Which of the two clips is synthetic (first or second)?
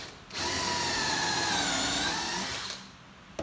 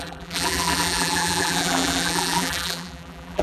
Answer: second